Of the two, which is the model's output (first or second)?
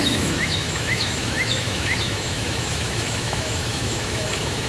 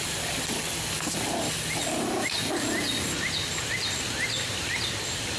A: first